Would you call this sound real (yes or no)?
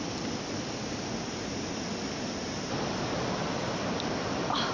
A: yes